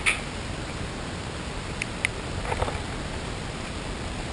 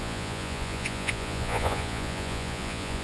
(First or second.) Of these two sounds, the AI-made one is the second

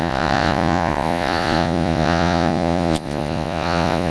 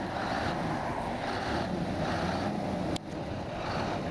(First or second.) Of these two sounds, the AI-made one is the first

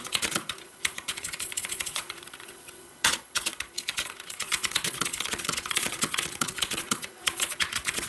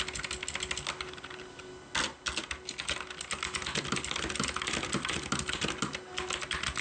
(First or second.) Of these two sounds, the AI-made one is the first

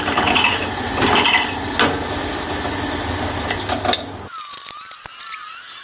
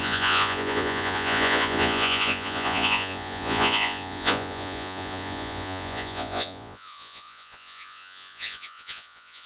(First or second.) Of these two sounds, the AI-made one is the second